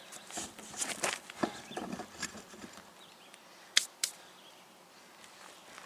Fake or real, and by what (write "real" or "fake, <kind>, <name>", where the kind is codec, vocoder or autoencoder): fake, vocoder, BigVGAN v2